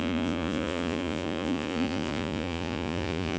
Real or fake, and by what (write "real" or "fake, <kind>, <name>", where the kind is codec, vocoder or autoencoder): fake, vocoder, Vocos